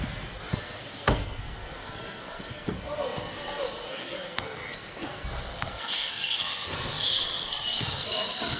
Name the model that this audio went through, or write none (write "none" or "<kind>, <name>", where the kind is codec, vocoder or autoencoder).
codec, SNAC